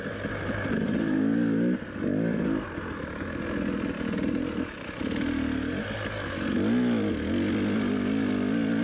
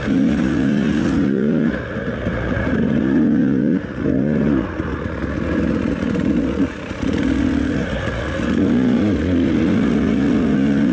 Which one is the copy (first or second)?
second